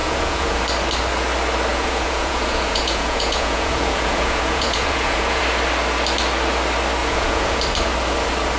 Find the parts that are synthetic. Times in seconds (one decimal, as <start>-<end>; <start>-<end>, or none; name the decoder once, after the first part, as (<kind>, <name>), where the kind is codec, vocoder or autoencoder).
0.0-0.6 (vocoder, Vocos); 1.7-5.4; 7.0-7.6